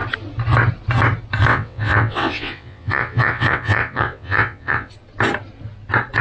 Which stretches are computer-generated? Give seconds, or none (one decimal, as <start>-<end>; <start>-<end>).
1.5-4.9